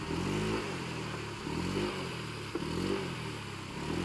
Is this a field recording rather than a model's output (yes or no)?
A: yes